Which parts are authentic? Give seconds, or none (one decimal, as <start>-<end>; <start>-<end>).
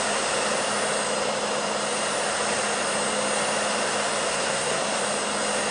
0.0-4.3; 5.0-5.7